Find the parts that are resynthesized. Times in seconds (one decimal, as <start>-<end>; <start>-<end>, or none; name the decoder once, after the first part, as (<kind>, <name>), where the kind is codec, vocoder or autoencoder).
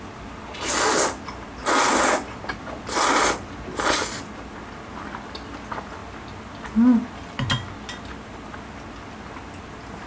none